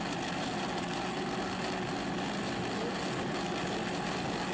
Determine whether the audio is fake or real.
real